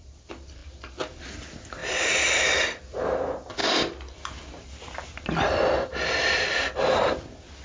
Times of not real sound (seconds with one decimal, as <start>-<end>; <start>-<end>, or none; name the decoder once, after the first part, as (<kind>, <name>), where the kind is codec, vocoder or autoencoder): none